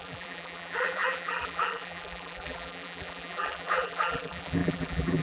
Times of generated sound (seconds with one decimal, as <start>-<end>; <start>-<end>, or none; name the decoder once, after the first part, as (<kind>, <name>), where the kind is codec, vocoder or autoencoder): 0.0-5.2 (vocoder, BigVGAN v2)